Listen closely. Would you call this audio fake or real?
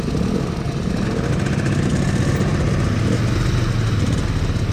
real